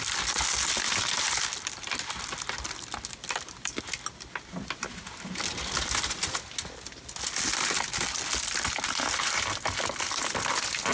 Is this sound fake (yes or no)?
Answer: no